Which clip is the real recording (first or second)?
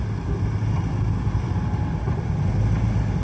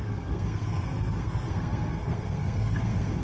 first